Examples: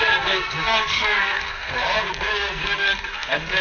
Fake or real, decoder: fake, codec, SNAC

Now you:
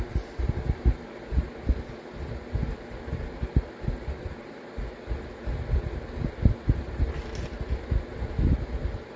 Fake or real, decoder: real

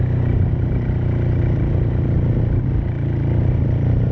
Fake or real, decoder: real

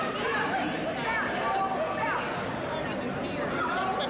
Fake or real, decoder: real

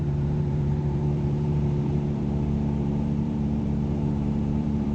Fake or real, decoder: fake, vocoder, BigVGAN v2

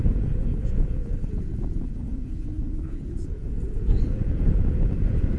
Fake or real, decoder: fake, vocoder, Vocos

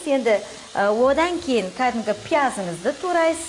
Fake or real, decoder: real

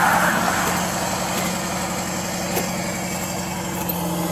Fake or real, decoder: real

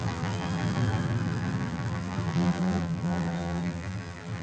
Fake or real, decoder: fake, vocoder, BigVGAN v2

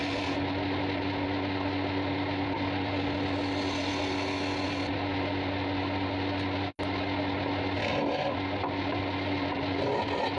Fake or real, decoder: real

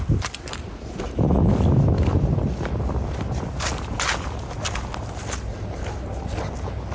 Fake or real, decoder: real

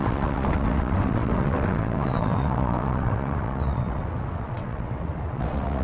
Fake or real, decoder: fake, vocoder, WaveNeXt